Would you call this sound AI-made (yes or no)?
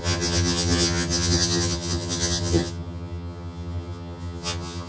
yes